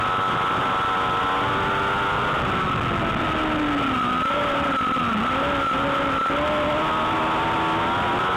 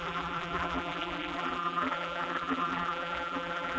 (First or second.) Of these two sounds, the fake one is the second